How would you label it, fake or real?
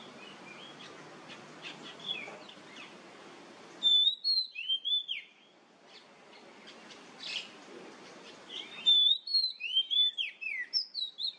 real